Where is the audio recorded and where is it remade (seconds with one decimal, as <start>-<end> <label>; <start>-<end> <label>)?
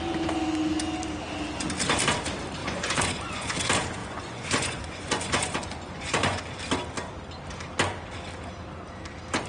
0.0-2.6 recorded; 2.6-3.5 remade; 3.5-4.0 recorded; 4.0-6.4 remade; 6.4-9.5 recorded